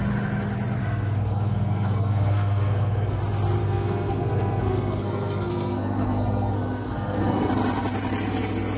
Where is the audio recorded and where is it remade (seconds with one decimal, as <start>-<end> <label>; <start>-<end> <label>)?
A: 0.0-0.8 recorded; 0.8-3.2 remade; 3.2-3.6 recorded; 3.6-7.5 remade; 7.5-8.8 recorded